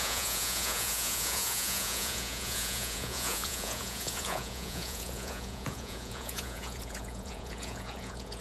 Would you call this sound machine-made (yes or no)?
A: yes